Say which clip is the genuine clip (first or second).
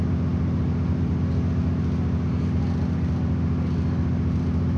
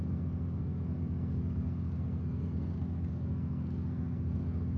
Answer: first